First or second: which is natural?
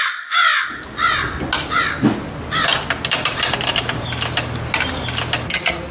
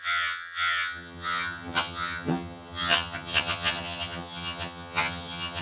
first